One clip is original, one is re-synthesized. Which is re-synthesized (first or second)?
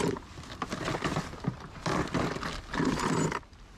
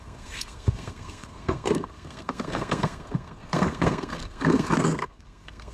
second